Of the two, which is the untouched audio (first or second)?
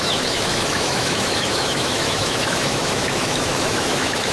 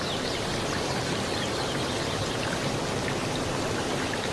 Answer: second